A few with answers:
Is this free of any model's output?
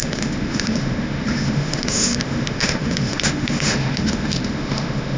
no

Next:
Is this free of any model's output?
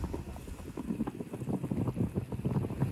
yes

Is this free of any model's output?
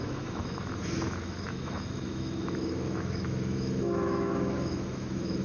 no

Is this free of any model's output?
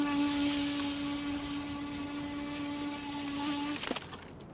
yes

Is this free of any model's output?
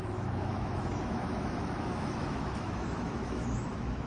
no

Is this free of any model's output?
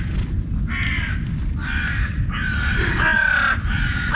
yes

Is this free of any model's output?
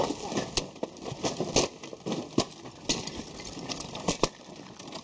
yes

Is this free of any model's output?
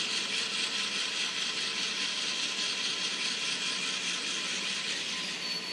yes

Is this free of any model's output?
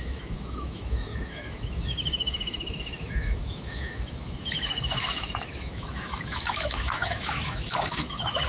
no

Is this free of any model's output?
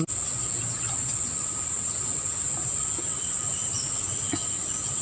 yes